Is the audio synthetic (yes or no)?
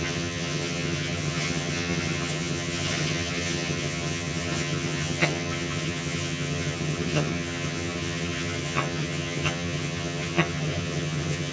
yes